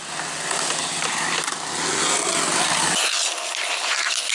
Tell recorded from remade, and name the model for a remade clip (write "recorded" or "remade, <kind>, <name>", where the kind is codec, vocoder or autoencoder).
recorded